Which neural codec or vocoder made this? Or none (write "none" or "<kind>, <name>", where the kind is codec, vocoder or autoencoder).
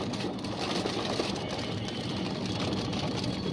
none